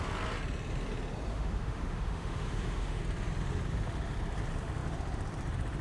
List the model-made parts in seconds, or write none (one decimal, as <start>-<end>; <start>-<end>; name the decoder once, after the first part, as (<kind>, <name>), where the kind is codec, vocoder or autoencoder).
1.3-3.0 (autoencoder, DAC-VAE)